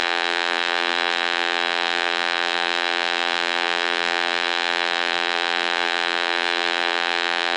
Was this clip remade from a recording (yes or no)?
yes